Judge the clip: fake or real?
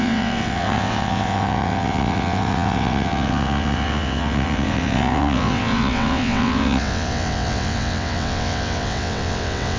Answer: fake